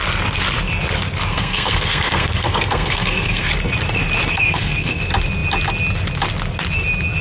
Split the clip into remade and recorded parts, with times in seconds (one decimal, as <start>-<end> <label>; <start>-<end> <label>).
0.0-1.3 recorded; 1.3-3.5 remade; 3.5-4.3 recorded; 4.3-5.0 remade; 5.0-7.2 recorded